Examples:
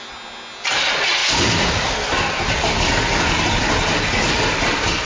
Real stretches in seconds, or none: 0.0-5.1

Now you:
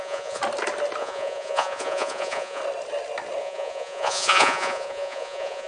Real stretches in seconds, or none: 0.4-1.0; 2.6-3.4

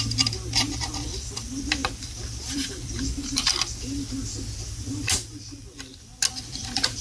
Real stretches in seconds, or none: 3.5-6.3